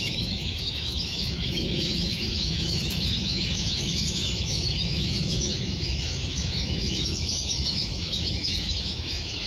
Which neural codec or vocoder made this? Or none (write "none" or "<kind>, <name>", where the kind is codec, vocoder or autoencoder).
autoencoder, DAC-VAE